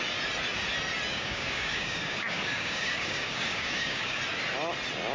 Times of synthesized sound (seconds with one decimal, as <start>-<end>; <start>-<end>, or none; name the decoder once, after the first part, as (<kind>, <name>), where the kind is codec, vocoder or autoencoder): 1.1-4.2 (codec, DAC)